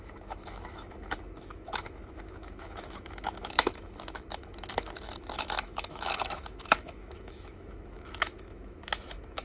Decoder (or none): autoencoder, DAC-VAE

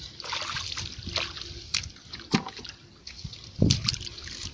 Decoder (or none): none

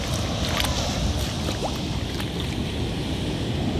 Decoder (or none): none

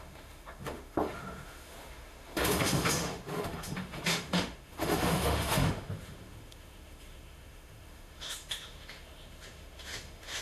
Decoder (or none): autoencoder, DAC-VAE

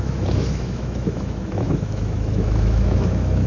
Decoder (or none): autoencoder, DAC-VAE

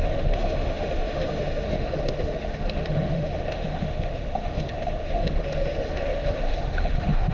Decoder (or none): autoencoder, DAC-VAE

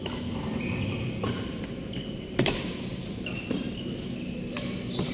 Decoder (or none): none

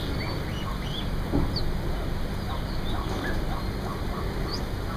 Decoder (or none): none